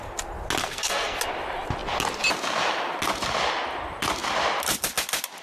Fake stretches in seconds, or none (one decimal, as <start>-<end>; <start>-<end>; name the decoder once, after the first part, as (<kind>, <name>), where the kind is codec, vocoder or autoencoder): 0.6-1.2 (codec, SNAC)